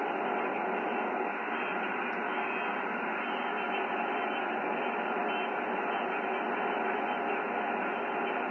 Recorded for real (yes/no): yes